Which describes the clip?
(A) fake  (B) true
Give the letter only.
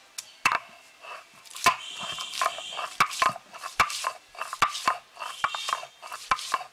B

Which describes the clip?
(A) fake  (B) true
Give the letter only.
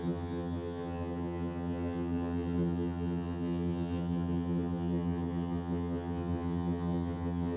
A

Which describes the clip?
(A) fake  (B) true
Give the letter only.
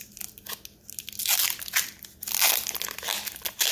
B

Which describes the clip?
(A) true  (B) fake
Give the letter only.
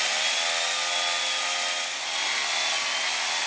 A